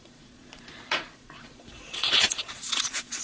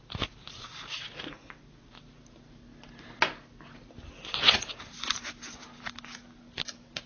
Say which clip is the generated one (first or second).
first